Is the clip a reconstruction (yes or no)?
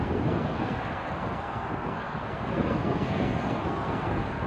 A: yes